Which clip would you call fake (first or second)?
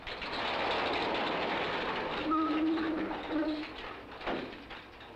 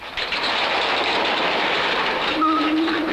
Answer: second